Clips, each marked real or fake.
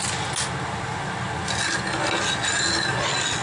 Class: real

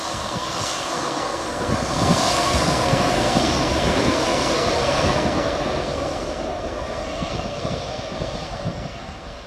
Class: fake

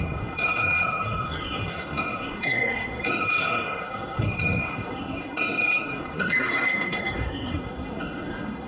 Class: fake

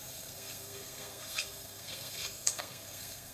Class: fake